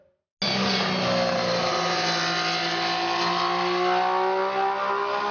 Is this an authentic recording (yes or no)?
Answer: yes